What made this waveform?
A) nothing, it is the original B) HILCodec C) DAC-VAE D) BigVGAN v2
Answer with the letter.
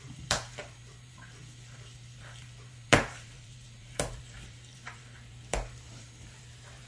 D